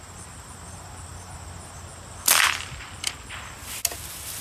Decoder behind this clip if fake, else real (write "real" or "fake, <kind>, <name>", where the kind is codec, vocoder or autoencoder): real